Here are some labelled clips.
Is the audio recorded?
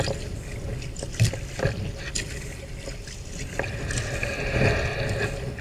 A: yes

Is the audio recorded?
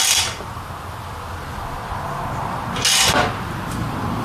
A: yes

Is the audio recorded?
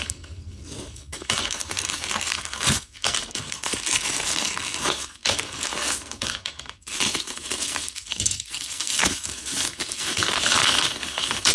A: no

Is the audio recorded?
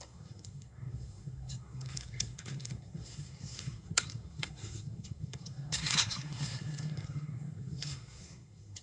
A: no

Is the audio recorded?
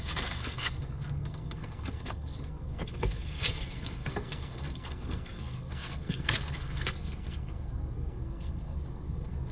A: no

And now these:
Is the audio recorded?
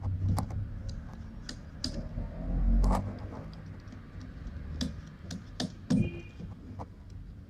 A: yes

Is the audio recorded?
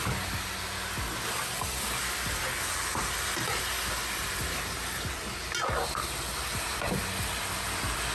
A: yes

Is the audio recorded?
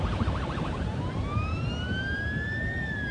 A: yes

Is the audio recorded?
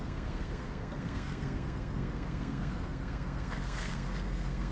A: no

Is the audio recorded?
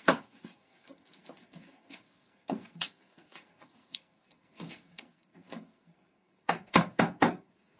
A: no